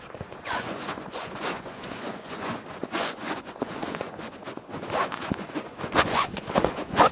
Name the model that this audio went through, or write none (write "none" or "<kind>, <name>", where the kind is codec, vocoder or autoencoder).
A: vocoder, Vocos